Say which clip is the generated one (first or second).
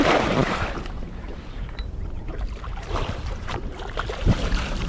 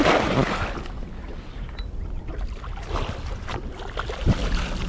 first